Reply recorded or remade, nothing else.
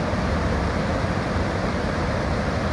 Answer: remade